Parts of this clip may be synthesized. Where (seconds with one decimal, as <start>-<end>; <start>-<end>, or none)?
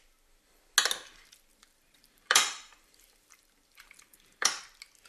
1.5-4.6